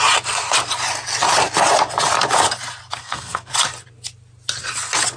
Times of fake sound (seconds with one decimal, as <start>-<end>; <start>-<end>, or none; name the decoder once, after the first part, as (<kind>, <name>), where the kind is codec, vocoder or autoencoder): 3.0-3.5 (codec, SNAC)